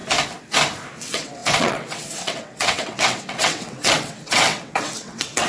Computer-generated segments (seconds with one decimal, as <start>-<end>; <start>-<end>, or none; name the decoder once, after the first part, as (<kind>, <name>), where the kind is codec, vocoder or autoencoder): 1.0-5.5 (vocoder, WaveNeXt)